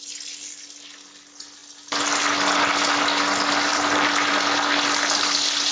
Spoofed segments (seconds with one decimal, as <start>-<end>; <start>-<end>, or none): 3.7-4.3